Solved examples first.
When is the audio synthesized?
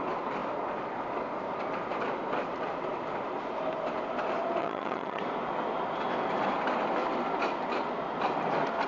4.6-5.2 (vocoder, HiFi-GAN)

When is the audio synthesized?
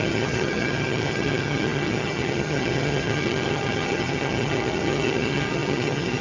0.0-6.2 (vocoder, HiFi-GAN)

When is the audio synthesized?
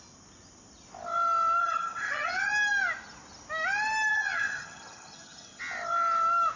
1.6-2.5 (vocoder, HiFi-GAN); 4.1-5.6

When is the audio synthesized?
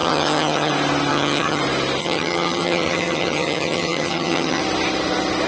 0.0-0.7 (vocoder, HiFi-GAN); 1.1-1.6; 2.0-4.6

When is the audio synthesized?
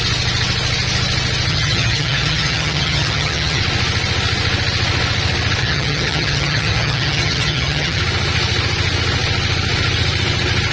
1.5-3.6 (vocoder, HiFi-GAN); 5.6-8.0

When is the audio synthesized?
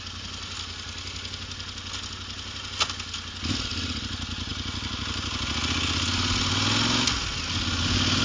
none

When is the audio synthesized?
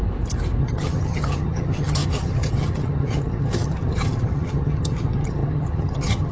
0.6-6.3 (vocoder, HiFi-GAN)